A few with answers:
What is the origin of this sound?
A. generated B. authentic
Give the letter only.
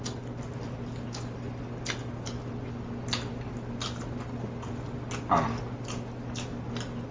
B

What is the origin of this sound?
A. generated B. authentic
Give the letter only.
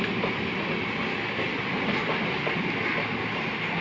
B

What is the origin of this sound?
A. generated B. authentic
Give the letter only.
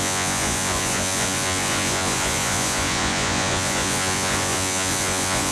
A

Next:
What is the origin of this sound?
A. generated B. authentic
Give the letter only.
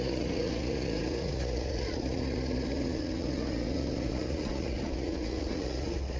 A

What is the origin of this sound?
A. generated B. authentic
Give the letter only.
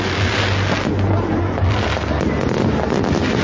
B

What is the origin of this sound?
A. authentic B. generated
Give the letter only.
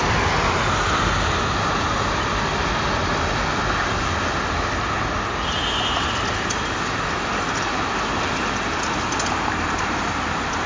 A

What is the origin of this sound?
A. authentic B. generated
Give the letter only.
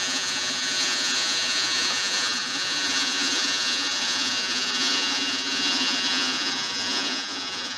B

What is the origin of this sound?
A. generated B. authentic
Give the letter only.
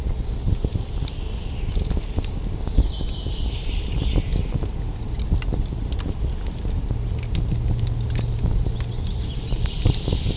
B